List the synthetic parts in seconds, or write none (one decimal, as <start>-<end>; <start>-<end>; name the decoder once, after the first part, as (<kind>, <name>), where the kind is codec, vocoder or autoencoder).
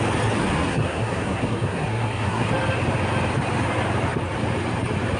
0.4-2.5 (codec, SNAC)